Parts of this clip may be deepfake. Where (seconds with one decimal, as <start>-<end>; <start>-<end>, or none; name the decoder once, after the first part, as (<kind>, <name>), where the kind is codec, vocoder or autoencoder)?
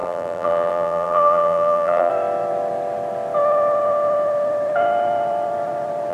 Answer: 0.0-2.1 (vocoder, BigVGAN v2)